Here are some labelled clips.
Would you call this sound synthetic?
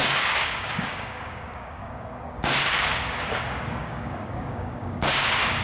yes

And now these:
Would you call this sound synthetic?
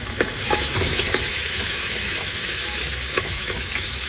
yes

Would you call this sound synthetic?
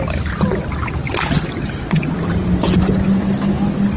no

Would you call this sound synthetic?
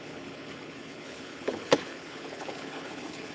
yes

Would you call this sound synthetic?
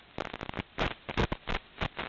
no